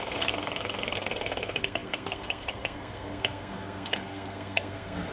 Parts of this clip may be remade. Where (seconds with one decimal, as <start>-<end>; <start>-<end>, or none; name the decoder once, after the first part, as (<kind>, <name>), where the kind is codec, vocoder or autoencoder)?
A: 0.0-5.1 (codec, SNAC)